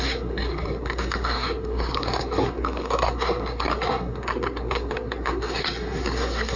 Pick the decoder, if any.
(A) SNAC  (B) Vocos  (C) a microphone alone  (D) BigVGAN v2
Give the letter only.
A